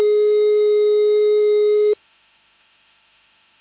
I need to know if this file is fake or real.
fake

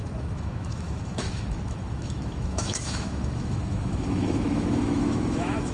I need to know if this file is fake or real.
fake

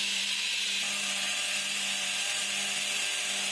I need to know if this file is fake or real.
fake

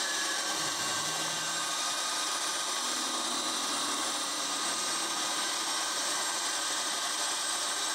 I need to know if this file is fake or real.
fake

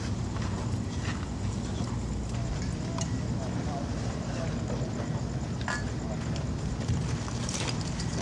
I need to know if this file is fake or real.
real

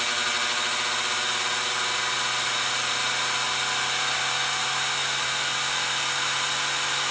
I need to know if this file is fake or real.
real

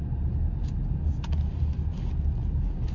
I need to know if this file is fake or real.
real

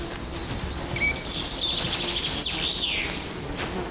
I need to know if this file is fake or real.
real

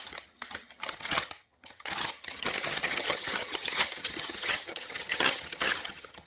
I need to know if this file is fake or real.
fake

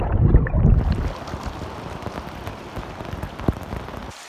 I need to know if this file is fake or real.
real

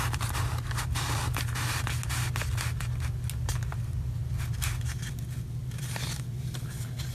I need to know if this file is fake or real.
real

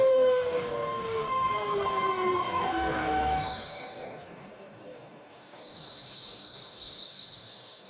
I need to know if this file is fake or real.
fake